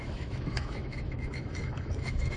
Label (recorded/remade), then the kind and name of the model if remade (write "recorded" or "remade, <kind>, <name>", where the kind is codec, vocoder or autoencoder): remade, autoencoder, DAC-VAE